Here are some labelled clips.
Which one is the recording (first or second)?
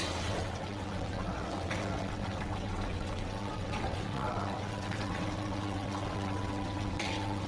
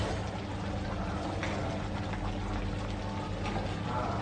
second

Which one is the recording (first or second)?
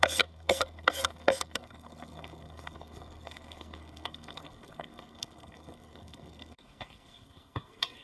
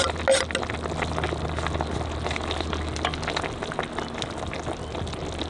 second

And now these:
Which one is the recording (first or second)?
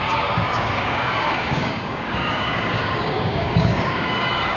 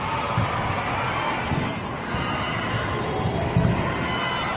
second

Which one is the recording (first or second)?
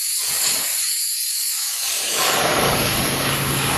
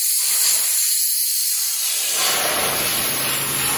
second